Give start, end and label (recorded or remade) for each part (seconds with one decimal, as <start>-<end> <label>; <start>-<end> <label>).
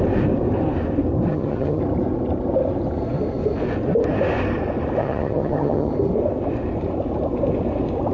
0.0-1.3 recorded; 1.3-1.8 remade; 1.8-5.0 recorded; 5.0-5.9 remade; 5.9-8.1 recorded